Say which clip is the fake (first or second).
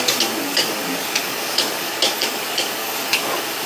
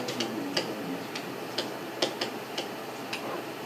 first